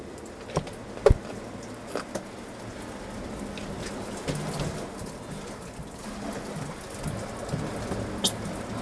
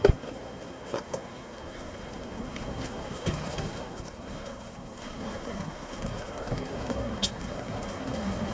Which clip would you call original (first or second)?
first